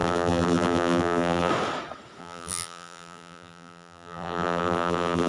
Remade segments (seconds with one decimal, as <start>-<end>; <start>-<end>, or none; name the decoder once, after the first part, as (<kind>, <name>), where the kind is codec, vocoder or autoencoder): 0.0-1.5 (vocoder, BigVGAN v2); 2.2-5.3